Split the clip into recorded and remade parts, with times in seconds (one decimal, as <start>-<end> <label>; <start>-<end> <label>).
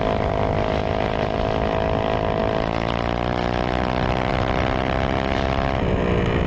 0.0-0.8 recorded; 0.8-1.4 remade; 1.4-6.5 recorded